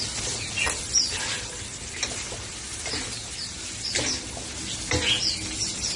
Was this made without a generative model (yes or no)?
yes